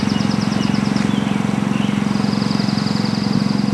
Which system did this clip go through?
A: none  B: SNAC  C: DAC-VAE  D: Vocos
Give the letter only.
A